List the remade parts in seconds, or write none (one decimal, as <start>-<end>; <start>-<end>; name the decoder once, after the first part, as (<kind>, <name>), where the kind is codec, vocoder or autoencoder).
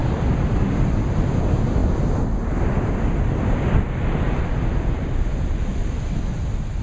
none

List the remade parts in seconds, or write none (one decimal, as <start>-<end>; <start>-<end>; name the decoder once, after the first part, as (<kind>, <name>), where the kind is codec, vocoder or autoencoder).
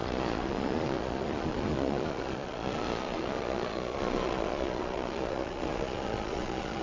0.0-6.8 (vocoder, Vocos)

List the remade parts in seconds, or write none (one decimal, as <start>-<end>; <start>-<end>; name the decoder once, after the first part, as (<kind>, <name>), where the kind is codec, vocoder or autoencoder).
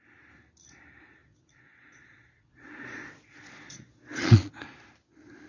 1.2-4.5 (vocoder, Vocos)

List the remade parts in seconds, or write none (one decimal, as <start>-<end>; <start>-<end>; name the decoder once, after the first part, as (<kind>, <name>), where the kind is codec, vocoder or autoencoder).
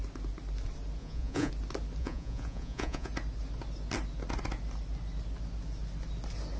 1.0-1.5 (vocoder, Vocos); 2.0-3.1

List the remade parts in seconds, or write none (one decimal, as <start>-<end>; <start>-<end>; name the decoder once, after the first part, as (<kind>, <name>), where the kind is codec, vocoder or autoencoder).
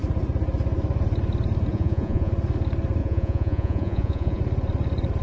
1.7-2.3 (vocoder, Vocos); 3.0-4.4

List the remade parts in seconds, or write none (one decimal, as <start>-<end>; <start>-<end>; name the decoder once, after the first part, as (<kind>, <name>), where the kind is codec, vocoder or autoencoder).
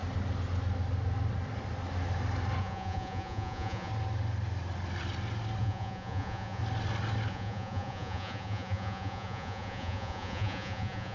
2.6-3.9 (vocoder, Vocos); 5.6-6.6; 7.3-11.1